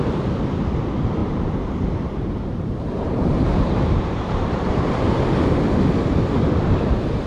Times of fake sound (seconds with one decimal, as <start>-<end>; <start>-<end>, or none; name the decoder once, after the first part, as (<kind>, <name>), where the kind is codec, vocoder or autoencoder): 1.2-5.0 (vocoder, BigVGAN v2)